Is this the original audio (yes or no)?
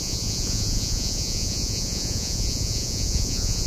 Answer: no